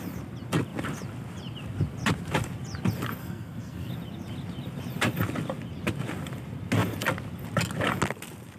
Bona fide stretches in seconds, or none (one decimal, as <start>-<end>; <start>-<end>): 0.0-3.2; 3.9-8.6